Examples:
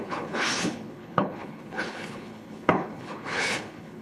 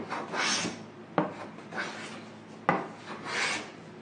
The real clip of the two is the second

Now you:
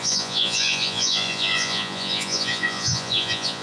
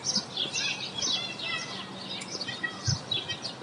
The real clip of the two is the second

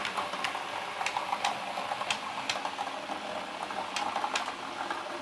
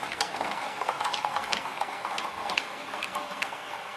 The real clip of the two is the first